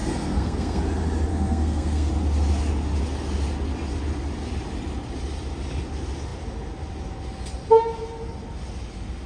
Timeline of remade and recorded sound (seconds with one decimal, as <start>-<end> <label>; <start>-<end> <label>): 0.0-0.8 remade; 0.8-1.3 recorded; 1.3-2.1 remade; 2.1-9.3 recorded